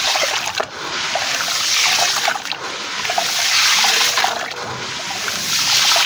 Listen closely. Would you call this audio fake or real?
real